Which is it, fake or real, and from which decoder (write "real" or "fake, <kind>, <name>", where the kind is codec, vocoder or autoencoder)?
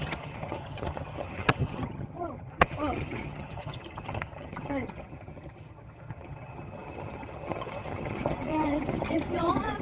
fake, vocoder, HiFi-GAN